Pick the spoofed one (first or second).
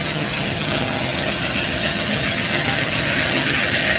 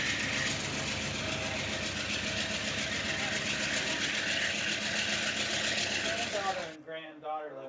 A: first